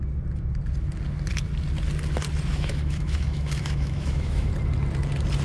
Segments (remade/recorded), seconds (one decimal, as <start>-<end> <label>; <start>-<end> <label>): 0.0-2.5 recorded; 2.5-4.5 remade; 4.5-5.4 recorded

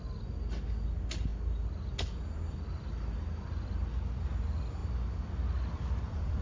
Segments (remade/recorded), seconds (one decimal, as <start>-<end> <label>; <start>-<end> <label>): 0.0-6.4 recorded

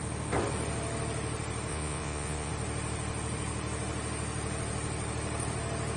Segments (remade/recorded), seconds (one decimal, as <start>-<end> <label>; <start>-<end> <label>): 0.0-1.7 recorded; 1.7-2.5 remade; 2.5-6.0 recorded